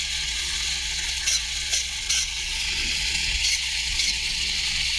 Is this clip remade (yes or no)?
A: yes